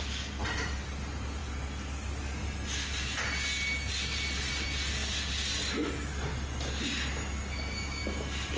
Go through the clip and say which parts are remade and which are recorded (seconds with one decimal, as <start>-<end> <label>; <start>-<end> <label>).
0.0-8.6 recorded